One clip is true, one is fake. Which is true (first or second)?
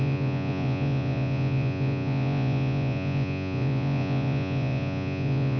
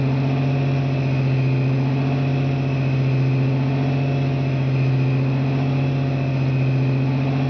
second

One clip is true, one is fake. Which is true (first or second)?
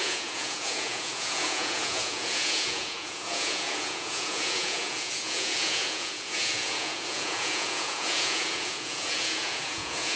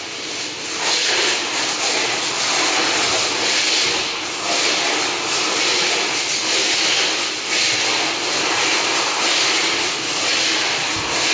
second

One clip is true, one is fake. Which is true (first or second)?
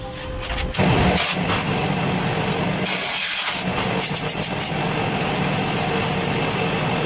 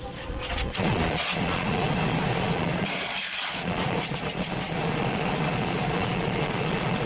first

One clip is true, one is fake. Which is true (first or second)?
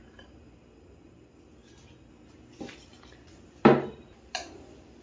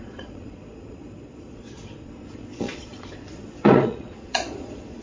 first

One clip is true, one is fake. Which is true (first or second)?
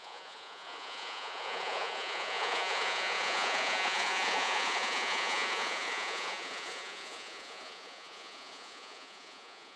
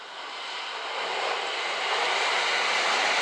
second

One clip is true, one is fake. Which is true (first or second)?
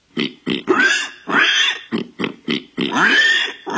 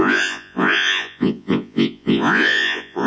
first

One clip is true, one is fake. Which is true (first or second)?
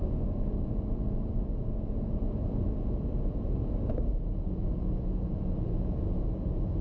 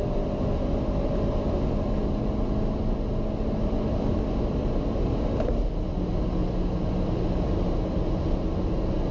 second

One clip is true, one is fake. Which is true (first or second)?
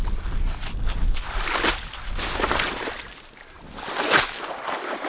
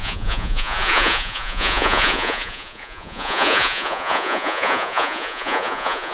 first